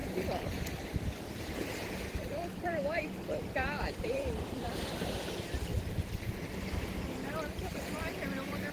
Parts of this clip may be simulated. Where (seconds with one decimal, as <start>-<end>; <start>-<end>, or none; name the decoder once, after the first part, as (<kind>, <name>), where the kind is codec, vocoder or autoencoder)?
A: 0.0-5.1 (vocoder, BigVGAN v2)